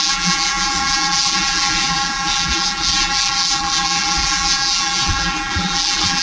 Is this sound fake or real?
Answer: fake